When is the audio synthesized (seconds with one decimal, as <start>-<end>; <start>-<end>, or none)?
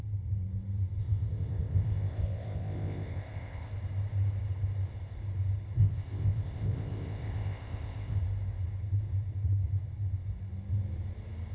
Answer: 1.0-3.7; 5.8-8.2